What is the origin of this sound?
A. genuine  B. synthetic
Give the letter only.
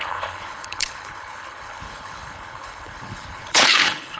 B